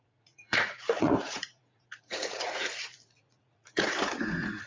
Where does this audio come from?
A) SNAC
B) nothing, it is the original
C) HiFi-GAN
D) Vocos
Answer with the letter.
D